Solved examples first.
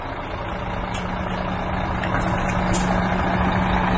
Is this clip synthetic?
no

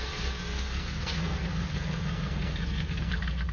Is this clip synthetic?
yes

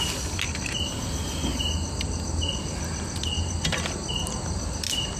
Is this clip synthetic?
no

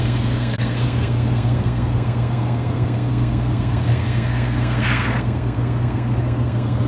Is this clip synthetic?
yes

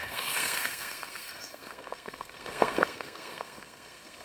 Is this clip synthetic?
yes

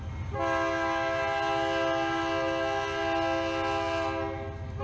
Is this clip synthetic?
no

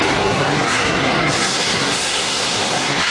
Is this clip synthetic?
yes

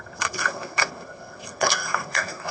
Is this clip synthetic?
yes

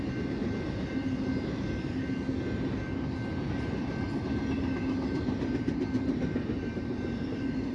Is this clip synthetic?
no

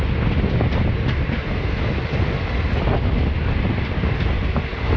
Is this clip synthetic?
no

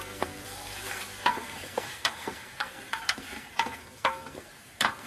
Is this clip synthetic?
yes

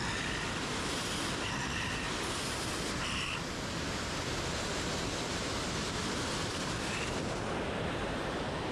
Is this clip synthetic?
no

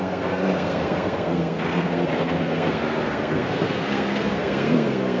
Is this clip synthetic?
yes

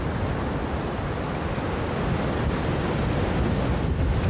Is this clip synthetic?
no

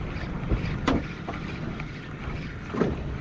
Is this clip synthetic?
no